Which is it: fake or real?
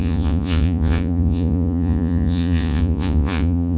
fake